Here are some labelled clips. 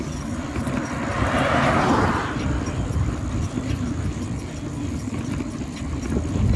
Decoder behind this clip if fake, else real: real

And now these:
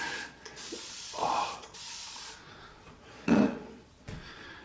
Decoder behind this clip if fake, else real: fake, vocoder, Vocos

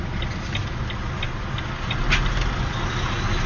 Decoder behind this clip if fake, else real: real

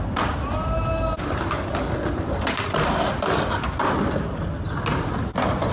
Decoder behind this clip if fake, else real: real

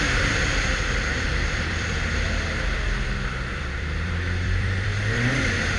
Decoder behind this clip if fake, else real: fake, vocoder, BigVGAN v2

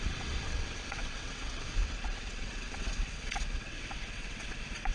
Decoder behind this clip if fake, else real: fake, vocoder, WaveNeXt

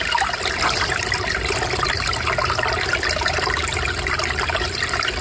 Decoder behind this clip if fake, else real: real